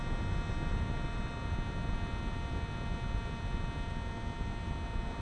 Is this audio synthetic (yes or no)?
no